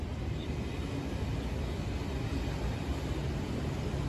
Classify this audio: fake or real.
real